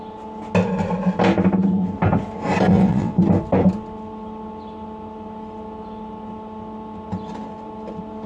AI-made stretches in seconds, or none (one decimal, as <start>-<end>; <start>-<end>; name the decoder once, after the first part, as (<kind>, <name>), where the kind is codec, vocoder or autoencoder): 2.7-3.2 (vocoder, WaveNeXt)